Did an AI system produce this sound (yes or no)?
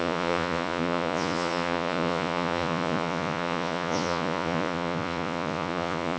yes